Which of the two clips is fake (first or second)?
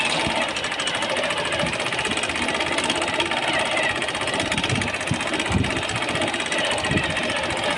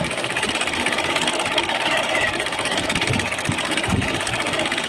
second